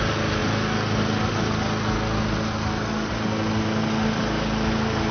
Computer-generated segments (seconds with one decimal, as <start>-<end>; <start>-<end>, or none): none